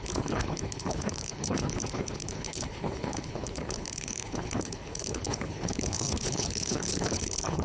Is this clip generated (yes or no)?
yes